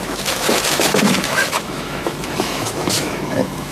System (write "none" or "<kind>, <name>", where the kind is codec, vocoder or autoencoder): autoencoder, DAC-VAE